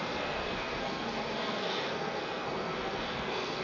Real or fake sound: fake